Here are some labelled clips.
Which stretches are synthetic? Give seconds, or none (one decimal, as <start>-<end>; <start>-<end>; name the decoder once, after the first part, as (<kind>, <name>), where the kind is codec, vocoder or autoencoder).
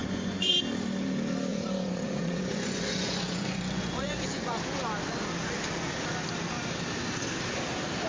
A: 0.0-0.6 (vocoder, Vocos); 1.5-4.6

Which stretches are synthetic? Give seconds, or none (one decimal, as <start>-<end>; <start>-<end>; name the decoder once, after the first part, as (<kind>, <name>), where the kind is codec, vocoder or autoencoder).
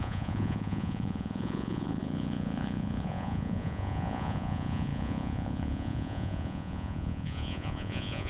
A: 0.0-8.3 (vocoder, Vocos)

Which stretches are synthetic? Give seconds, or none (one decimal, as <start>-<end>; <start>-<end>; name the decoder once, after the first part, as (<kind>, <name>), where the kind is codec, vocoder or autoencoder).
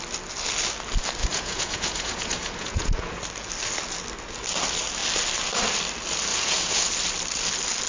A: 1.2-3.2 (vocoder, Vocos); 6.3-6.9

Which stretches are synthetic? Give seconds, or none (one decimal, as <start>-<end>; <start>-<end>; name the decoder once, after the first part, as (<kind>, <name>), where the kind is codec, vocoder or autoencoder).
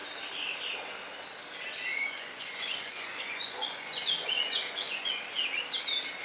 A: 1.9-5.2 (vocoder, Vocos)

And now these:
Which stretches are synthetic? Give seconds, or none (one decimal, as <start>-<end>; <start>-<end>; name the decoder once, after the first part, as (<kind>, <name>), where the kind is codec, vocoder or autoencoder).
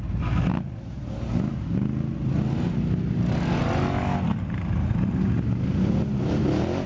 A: none